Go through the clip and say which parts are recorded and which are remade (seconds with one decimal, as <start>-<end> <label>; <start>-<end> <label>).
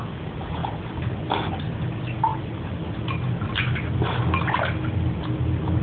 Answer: 0.0-5.8 recorded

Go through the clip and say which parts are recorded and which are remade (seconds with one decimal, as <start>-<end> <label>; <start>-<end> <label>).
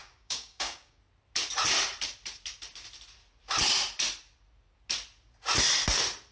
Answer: 0.0-1.0 remade; 1.0-6.3 recorded